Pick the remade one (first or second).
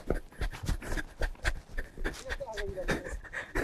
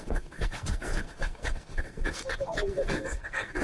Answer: second